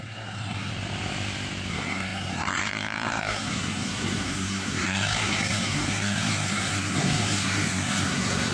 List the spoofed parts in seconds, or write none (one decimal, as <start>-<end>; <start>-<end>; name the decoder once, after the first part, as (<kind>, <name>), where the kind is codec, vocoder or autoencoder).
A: 0.0-0.7 (codec, SNAC); 1.7-8.5